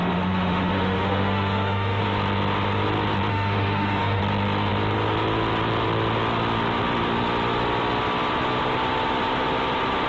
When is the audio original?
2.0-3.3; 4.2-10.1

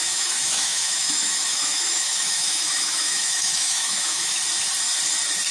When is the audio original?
4.4-5.5

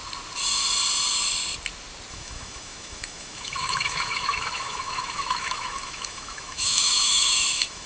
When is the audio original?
0.0-2.1